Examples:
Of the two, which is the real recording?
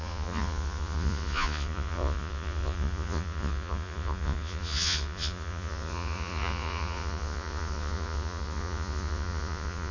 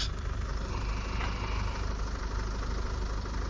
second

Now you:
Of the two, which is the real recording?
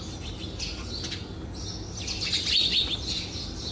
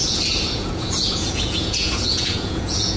first